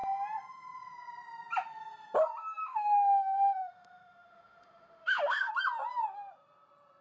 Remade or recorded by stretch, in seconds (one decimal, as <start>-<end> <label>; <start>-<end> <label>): 0.0-2.6 recorded; 2.6-5.5 remade; 5.5-7.0 recorded